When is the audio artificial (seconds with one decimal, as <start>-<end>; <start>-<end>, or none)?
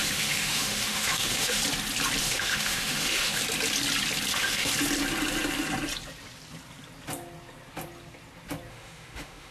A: 0.0-1.6; 2.2-3.4; 4.3-4.7; 8.7-9.5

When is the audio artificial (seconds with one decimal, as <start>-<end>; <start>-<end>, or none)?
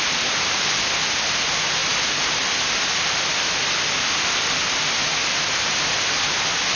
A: none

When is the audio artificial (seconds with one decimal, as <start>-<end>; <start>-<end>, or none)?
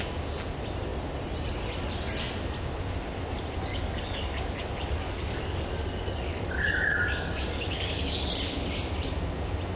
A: 3.7-8.3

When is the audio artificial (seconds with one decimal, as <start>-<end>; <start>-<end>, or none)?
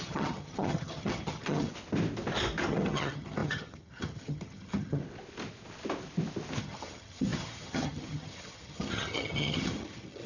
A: 0.0-1.7; 2.7-5.0; 6.6-10.3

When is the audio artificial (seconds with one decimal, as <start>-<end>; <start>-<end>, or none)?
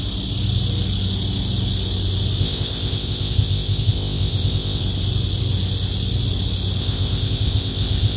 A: 2.4-4.8; 6.8-8.2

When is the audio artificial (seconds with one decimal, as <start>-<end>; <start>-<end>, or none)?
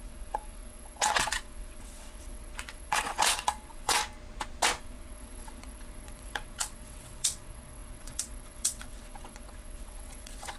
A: 0.0-4.0; 4.8-10.6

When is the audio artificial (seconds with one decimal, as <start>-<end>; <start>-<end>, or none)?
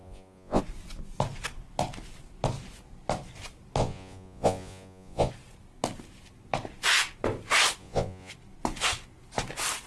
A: 0.0-0.6; 3.8-5.3; 7.8-8.3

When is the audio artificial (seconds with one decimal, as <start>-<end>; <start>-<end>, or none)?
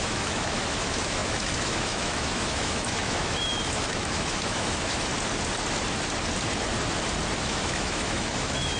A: 0.0-5.1; 7.4-8.8